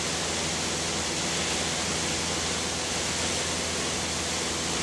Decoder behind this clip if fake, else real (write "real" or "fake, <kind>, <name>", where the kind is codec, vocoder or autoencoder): real